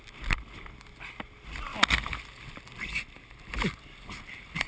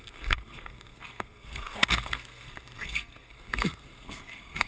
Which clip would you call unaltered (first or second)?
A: first